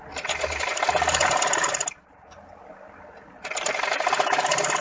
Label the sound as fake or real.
real